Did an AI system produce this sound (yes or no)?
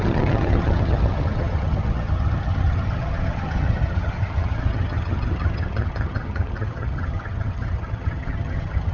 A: yes